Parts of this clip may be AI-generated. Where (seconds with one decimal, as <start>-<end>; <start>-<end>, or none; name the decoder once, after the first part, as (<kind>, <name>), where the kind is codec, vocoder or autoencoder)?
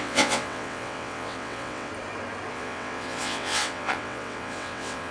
0.0-1.9 (vocoder, WaveNeXt); 2.5-5.1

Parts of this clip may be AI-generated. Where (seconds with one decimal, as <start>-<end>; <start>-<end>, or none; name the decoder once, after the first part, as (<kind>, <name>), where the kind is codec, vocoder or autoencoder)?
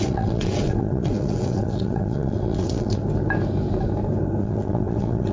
0.0-3.0 (vocoder, WaveNeXt); 4.4-5.3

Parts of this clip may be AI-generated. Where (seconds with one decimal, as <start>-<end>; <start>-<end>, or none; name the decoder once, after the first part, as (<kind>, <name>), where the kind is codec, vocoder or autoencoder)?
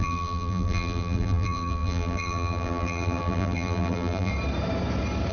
0.0-4.3 (vocoder, BigVGAN v2)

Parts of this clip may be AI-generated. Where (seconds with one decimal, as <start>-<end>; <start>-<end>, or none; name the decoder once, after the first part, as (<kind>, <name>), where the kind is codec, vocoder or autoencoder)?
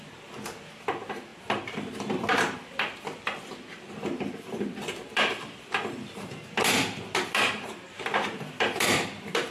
0.0-9.5 (vocoder, BigVGAN v2)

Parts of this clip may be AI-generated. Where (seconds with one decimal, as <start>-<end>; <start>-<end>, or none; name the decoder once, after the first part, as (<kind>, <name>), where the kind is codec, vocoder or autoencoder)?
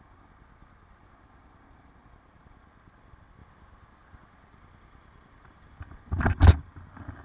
none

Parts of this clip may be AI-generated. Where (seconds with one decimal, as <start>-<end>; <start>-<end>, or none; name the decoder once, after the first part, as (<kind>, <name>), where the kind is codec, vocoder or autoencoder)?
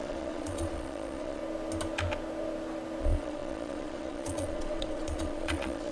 0.0-1.4 (vocoder, Vocos); 3.0-5.9